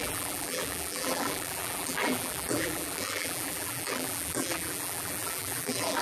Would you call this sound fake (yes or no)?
yes